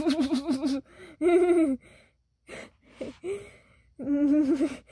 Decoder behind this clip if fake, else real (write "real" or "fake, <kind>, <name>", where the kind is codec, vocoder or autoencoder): real